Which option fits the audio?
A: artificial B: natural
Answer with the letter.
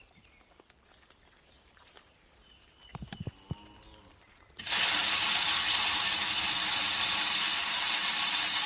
B